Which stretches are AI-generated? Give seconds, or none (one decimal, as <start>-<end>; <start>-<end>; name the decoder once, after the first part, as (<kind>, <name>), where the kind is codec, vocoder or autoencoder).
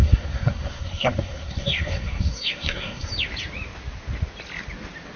0.0-3.1 (codec, SNAC)